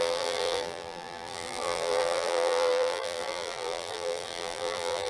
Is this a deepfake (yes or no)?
yes